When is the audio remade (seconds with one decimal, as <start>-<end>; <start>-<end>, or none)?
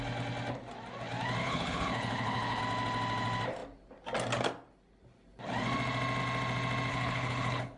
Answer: 1.4-2.6; 6.9-7.8